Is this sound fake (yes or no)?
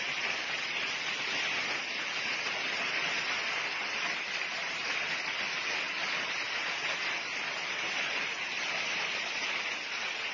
no